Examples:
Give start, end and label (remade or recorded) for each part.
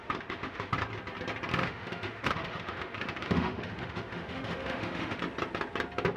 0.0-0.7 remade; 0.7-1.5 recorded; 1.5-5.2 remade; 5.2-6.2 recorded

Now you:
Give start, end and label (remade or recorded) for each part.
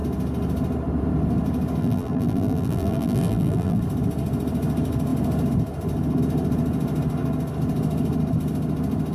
0.0-1.8 recorded; 1.8-3.8 remade; 3.8-9.1 recorded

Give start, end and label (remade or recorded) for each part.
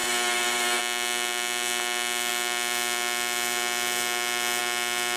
0.0-0.8 remade; 0.8-5.2 recorded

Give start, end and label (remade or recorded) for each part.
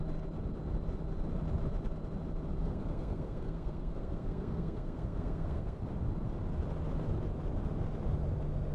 0.0-2.6 recorded; 2.6-5.8 remade; 5.8-8.7 recorded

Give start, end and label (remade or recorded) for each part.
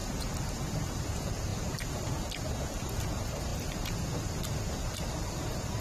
0.0-5.8 recorded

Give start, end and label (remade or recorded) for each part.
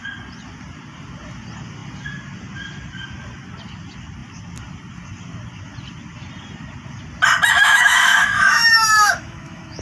0.0-7.6 recorded; 7.6-9.8 remade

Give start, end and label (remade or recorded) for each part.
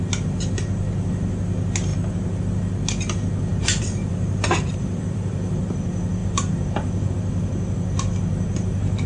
0.0-3.5 recorded; 3.5-5.6 remade; 5.6-6.2 recorded; 6.2-7.1 remade; 7.1-9.1 recorded